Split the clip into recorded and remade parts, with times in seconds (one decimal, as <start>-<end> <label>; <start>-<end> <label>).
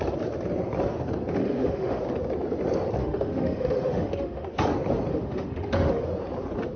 0.0-1.4 recorded; 1.4-2.0 remade; 2.0-3.0 recorded; 3.0-4.5 remade; 4.5-5.1 recorded; 5.1-6.0 remade; 6.0-6.8 recorded